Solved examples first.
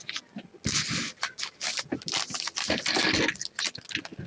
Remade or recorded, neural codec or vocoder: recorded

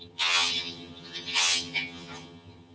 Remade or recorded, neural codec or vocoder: remade, vocoder, HiFi-GAN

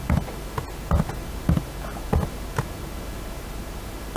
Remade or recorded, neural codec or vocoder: recorded